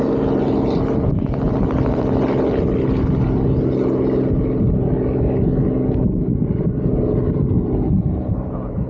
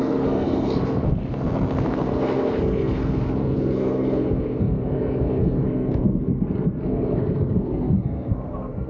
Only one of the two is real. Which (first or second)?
first